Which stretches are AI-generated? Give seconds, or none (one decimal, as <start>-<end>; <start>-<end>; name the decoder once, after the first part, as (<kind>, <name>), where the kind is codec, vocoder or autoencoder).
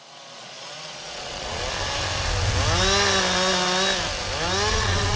0.0-1.6 (vocoder, Vocos); 4.7-5.2